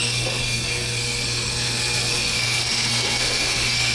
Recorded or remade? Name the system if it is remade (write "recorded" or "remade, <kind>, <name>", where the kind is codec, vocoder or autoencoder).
remade, codec, SNAC